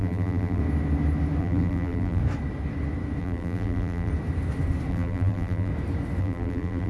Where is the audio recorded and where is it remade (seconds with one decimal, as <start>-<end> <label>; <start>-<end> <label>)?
0.0-0.6 remade; 0.6-1.4 recorded; 1.4-2.2 remade; 2.2-3.2 recorded; 3.2-4.1 remade; 4.1-4.9 recorded; 4.9-5.7 remade; 5.7-6.2 recorded; 6.2-6.9 remade